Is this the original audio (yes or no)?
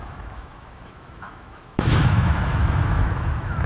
no